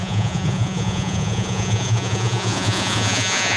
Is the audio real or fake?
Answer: fake